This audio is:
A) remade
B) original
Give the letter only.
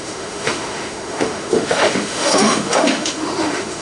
A